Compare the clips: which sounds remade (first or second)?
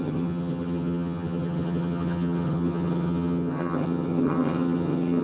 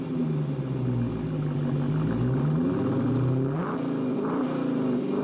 first